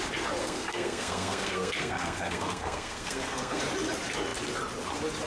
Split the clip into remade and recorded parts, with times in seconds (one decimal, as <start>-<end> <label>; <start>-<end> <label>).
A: 0.0-0.4 recorded; 0.4-3.6 remade; 3.6-5.3 recorded